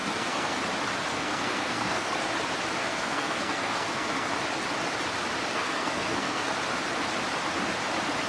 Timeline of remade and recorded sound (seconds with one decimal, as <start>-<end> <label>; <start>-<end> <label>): 0.0-0.6 remade; 0.6-1.1 recorded; 1.1-2.1 remade; 2.1-2.8 recorded; 2.8-4.3 remade; 4.3-5.5 recorded; 5.5-6.5 remade; 6.5-8.3 recorded